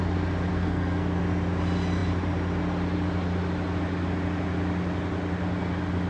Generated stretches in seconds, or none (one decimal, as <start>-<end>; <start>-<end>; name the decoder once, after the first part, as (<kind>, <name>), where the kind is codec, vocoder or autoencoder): 0.5-1.2 (codec, SNAC)